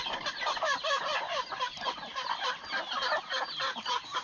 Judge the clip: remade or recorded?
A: remade